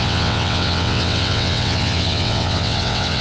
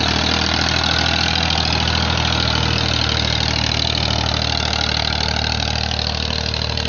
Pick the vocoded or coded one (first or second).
first